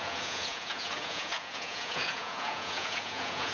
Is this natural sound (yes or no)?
no